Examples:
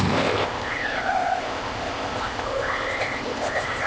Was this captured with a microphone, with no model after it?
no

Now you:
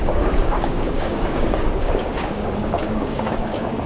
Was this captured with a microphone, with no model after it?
no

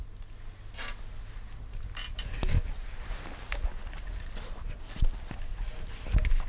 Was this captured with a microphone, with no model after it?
yes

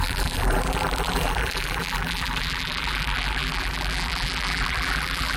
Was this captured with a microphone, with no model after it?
no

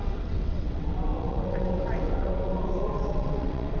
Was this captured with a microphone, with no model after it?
no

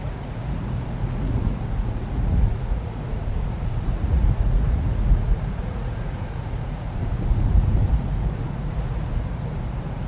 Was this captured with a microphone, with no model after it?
no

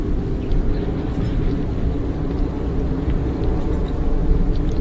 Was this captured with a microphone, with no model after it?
yes